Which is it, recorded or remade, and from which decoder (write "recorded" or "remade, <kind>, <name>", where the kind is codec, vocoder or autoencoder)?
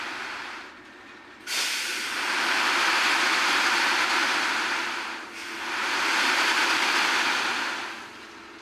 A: recorded